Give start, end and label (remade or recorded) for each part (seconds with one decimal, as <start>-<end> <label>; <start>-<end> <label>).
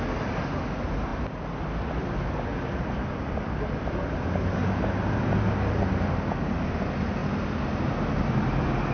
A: 0.0-1.1 recorded; 1.1-1.9 remade; 1.9-2.5 recorded; 2.5-5.1 remade; 5.1-8.9 recorded